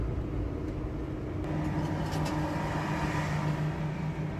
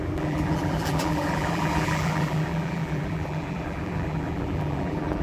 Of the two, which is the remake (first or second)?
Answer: second